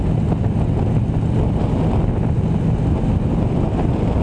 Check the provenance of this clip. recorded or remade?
recorded